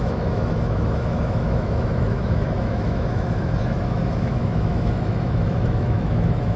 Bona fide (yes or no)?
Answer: no